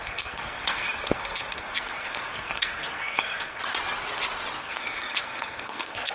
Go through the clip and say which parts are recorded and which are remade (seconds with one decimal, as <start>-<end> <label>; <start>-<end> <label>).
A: 0.0-3.6 remade; 3.6-4.6 recorded; 4.6-6.1 remade